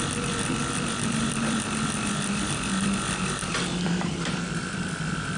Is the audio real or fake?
fake